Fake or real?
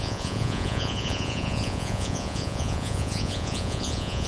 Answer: fake